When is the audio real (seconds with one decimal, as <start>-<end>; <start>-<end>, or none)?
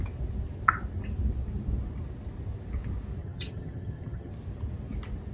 0.0-3.2; 4.3-5.3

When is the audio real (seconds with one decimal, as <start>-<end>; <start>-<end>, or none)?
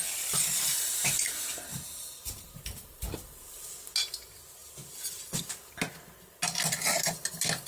0.0-1.7; 3.7-7.7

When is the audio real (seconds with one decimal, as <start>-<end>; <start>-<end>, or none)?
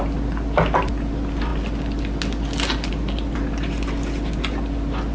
0.0-5.1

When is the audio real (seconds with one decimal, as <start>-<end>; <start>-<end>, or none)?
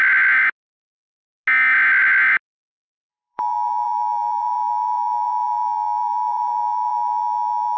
0.0-3.1; 7.2-7.8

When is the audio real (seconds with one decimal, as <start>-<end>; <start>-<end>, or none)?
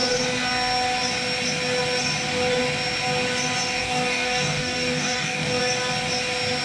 0.0-3.8; 5.6-6.6